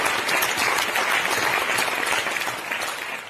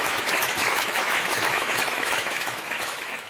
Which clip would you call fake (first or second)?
second